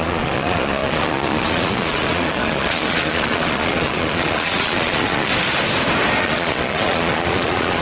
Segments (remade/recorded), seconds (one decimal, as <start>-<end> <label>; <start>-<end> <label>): 0.0-5.3 remade; 5.3-6.2 recorded; 6.2-7.8 remade

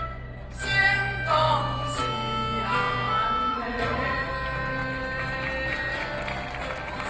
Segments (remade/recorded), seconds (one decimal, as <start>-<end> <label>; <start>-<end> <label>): 0.0-3.5 recorded; 3.5-4.3 remade; 4.3-7.1 recorded

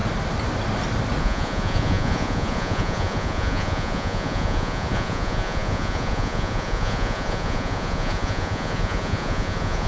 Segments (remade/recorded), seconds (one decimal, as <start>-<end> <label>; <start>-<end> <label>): 0.0-1.2 recorded; 1.2-9.9 remade